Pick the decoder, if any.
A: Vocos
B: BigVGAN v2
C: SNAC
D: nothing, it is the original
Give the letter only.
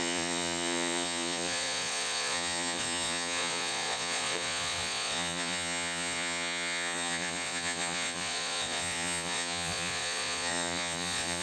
A